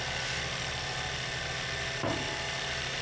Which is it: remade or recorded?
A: recorded